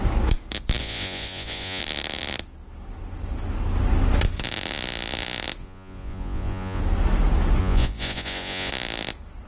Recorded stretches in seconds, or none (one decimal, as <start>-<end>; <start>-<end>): 0.0-0.8; 1.8-5.6; 6.8-7.6; 8.7-9.5